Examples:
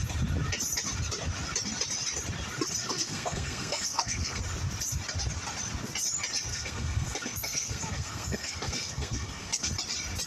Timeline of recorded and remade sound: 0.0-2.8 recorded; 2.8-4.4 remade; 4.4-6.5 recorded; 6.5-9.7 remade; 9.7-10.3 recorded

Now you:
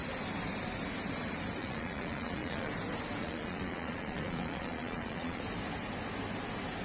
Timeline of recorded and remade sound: 0.0-1.6 recorded; 1.6-2.7 remade; 2.7-3.2 recorded; 3.2-5.4 remade; 5.4-6.8 recorded

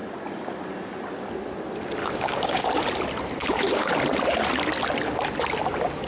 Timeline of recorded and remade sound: 0.0-2.0 recorded; 2.0-2.7 remade; 2.7-3.4 recorded; 3.4-3.9 remade; 3.9-6.1 recorded

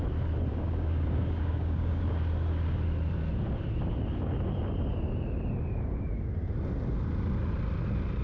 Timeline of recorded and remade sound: 0.0-0.5 recorded; 0.5-2.0 remade; 2.0-8.2 recorded